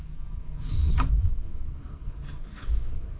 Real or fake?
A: fake